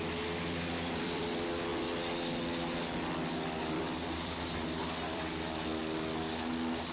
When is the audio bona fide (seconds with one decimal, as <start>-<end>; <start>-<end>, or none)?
1.7-3.6; 5.8-6.5